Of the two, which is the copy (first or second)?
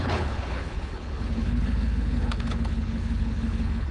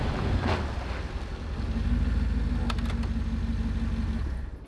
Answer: first